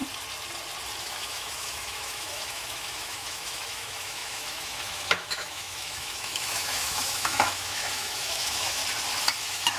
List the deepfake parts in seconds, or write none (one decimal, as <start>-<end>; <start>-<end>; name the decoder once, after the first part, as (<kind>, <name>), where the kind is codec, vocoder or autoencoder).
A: 1.0-8.8 (autoencoder, DAC-VAE); 9.4-9.8